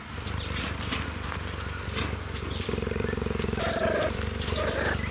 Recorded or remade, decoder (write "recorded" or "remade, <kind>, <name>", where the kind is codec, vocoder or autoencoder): remade, vocoder, BigVGAN v2